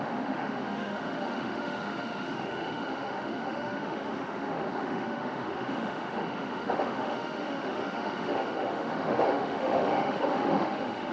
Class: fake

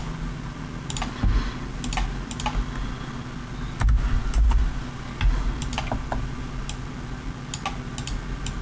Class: real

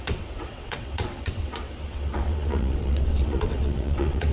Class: fake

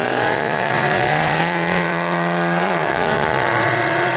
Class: fake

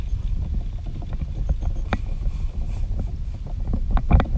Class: real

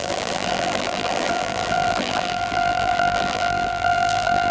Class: fake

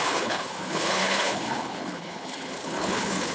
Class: fake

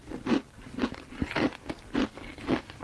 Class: real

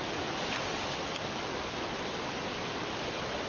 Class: real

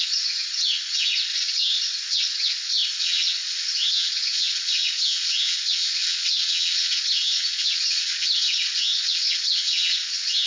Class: fake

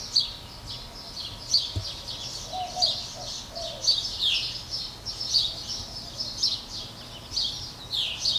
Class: real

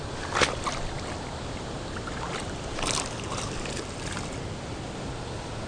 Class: real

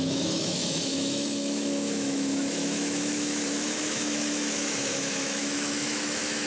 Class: fake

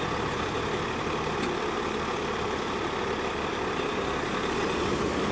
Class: real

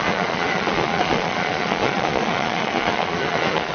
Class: fake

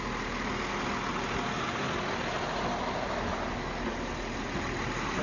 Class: real